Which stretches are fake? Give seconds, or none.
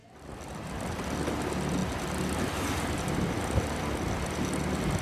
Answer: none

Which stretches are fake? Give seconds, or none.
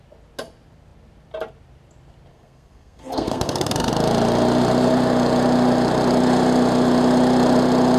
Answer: 2.3-3.9 (codec, SNAC)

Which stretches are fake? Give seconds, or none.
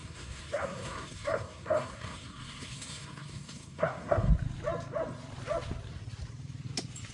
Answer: 0.0-4.3 (codec, SNAC)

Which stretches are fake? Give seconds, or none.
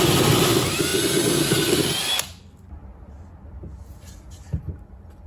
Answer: none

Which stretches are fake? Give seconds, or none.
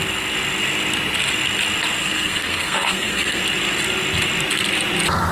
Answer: 2.0-3.4 (codec, SNAC)